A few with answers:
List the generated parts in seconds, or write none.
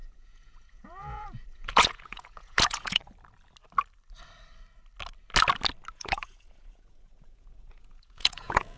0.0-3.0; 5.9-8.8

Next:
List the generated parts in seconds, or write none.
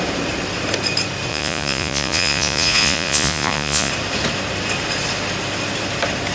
1.3-3.9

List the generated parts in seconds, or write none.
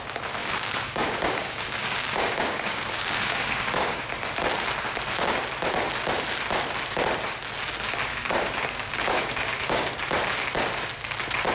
0.4-4.0; 8.1-10.0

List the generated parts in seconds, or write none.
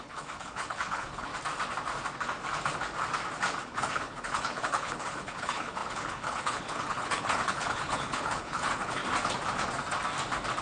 0.0-1.3; 3.6-9.0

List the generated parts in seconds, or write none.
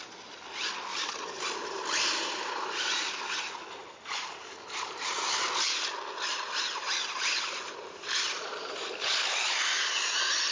0.9-5.1; 7.0-9.6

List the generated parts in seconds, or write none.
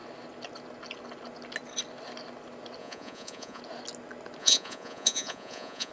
2.8-3.6; 4.4-5.9